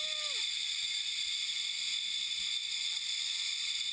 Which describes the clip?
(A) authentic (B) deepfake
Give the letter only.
A